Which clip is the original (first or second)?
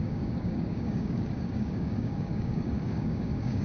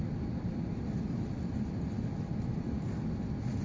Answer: second